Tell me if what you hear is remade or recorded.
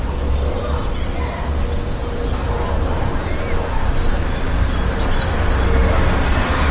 recorded